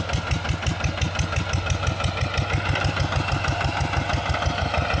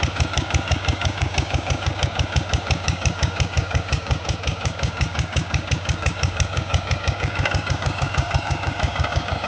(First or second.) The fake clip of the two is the second